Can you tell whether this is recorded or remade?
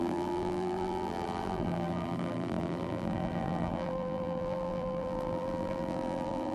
remade